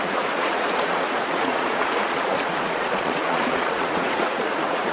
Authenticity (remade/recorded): remade